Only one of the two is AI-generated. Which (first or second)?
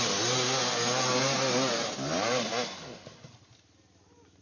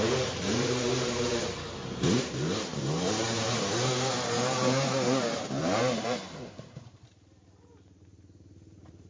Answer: second